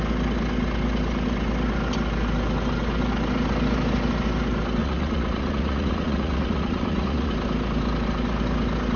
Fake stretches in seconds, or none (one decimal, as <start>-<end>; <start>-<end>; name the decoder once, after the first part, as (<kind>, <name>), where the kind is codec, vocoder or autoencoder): 4.8-7.3 (vocoder, Vocos)